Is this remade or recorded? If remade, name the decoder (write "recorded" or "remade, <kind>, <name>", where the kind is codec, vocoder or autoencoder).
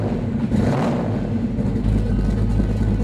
recorded